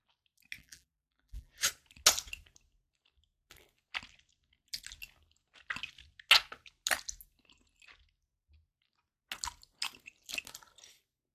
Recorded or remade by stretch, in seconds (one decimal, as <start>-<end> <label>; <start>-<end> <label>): 0.0-0.6 recorded; 0.6-1.5 remade; 1.5-11.3 recorded